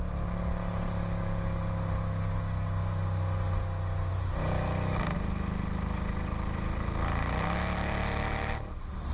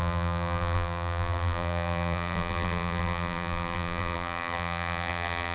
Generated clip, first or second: second